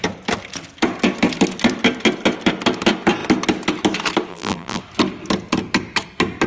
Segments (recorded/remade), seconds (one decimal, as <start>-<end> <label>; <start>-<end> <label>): 0.0-4.3 recorded; 4.3-4.8 remade; 4.8-6.5 recorded